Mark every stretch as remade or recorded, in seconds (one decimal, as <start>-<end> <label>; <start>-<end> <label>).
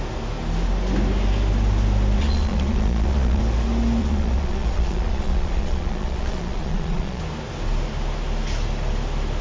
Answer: 0.0-2.2 recorded; 2.2-3.4 remade; 3.4-4.0 recorded; 4.0-7.2 remade; 7.2-9.4 recorded